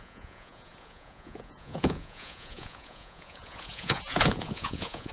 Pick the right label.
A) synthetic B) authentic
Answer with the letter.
A